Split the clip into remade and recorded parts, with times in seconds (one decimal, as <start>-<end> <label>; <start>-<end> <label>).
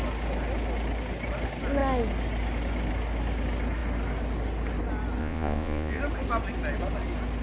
0.0-5.2 recorded; 5.2-6.0 remade; 6.0-7.4 recorded